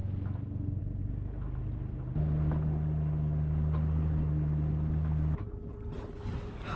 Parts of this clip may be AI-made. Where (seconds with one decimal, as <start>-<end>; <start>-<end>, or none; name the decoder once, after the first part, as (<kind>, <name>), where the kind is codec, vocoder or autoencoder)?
none

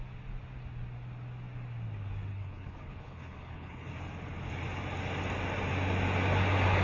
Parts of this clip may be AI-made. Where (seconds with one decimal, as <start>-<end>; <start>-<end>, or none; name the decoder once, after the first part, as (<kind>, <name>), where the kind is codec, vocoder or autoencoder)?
2.3-3.9 (codec, HILCodec)

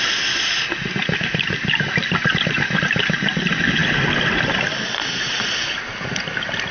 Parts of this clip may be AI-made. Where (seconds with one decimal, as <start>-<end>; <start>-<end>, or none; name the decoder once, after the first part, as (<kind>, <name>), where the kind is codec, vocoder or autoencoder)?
none

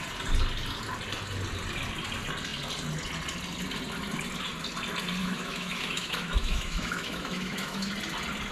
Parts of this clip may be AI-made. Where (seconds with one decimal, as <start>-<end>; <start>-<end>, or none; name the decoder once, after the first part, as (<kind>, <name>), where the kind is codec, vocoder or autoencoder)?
5.2-7.9 (autoencoder, DAC-VAE)